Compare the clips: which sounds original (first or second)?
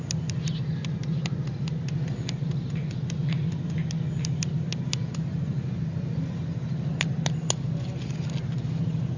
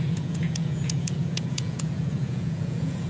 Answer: first